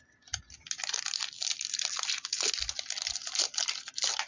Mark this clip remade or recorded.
recorded